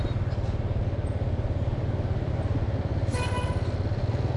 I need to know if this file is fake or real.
real